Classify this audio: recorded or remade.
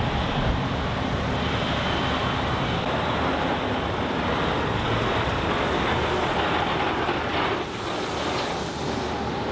recorded